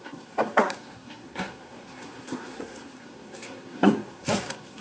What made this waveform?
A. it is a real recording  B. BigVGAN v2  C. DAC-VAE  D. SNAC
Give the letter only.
D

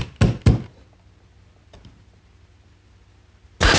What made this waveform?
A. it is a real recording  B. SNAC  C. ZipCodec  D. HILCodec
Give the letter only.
A